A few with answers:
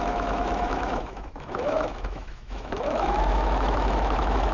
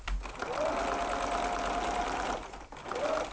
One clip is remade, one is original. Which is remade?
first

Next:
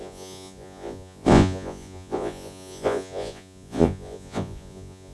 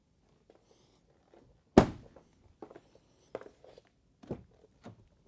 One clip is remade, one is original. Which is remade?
first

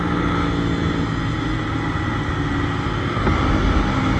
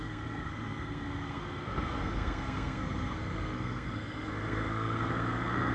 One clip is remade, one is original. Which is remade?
second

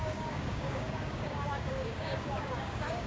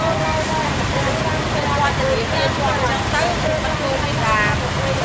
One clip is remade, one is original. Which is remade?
first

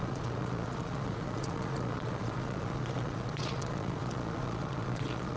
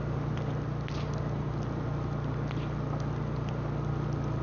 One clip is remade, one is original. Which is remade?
first